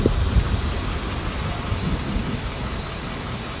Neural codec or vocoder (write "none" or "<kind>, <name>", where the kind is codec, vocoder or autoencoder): none